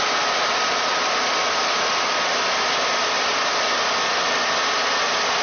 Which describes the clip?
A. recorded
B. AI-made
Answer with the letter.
A